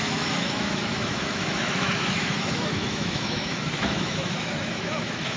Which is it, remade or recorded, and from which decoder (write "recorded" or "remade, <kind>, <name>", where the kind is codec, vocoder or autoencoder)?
remade, autoencoder, DAC-VAE